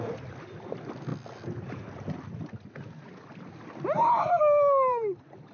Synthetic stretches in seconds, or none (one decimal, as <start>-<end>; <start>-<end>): none